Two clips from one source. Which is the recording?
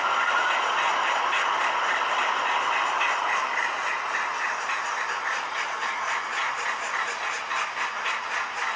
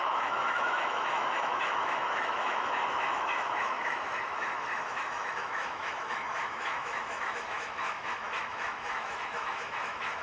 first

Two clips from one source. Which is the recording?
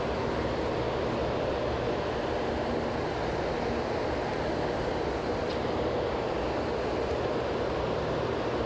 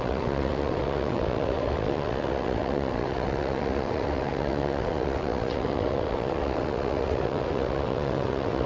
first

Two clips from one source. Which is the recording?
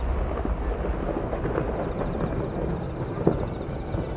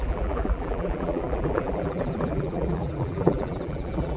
first